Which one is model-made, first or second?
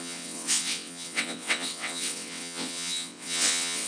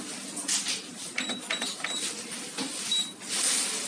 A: first